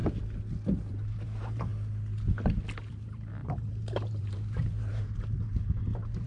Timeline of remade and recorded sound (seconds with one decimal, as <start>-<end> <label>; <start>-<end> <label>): 0.0-0.9 recorded; 0.9-1.7 remade; 1.7-2.9 recorded; 2.9-6.3 remade